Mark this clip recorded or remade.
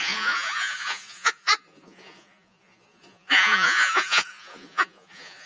remade